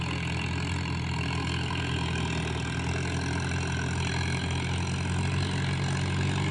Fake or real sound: real